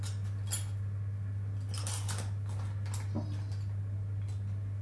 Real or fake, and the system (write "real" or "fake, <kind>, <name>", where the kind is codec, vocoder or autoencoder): real